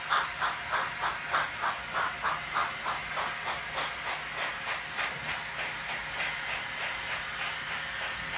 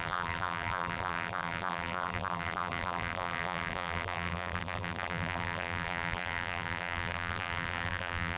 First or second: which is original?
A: first